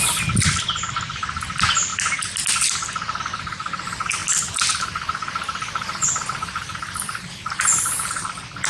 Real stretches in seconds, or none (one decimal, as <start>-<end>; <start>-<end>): 0.0-8.7